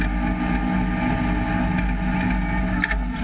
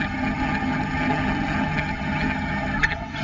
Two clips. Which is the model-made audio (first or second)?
second